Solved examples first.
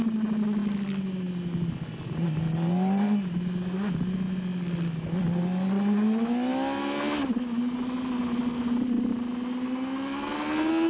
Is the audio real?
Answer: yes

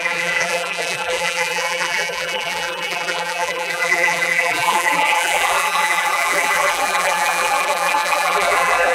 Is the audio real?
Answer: no